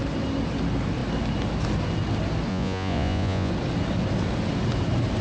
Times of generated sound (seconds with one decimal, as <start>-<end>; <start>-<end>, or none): 2.5-3.5